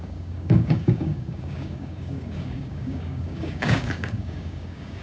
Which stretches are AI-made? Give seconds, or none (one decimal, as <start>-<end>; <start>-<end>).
0.0-5.0